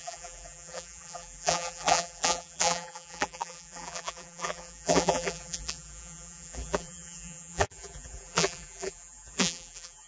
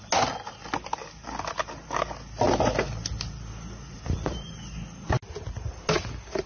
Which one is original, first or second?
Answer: second